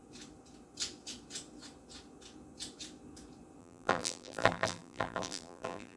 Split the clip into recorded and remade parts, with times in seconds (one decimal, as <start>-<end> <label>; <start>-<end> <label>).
0.0-3.6 recorded; 3.6-6.0 remade